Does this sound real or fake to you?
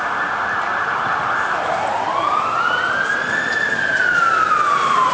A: real